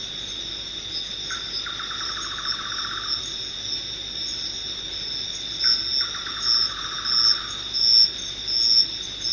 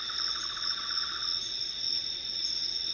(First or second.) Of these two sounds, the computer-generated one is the second